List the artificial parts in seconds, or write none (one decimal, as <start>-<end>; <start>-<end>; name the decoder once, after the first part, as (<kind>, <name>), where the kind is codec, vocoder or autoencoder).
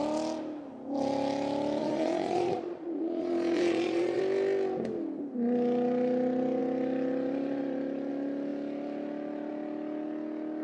1.8-4.2 (vocoder, Vocos)